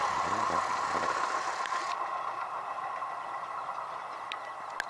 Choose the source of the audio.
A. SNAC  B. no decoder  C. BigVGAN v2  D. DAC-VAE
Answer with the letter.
B